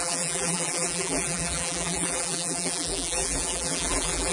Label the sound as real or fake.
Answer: fake